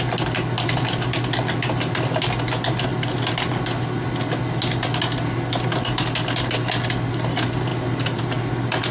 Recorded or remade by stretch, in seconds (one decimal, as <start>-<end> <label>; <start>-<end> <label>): 0.0-8.9 recorded